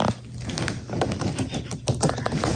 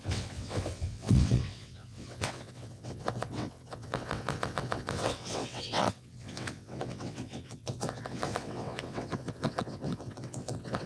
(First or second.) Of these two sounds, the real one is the first